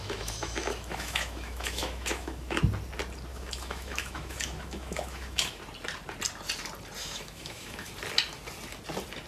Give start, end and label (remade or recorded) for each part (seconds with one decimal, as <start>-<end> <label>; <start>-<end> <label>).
0.0-2.6 remade; 2.6-3.3 recorded; 3.3-5.6 remade; 5.6-7.0 recorded; 7.0-7.9 remade; 7.9-9.3 recorded